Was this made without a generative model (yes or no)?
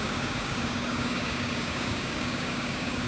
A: no